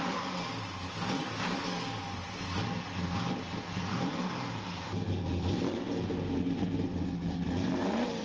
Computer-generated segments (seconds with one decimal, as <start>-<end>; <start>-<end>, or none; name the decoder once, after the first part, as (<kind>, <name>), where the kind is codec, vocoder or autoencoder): 1.2-2.0 (codec, DAC)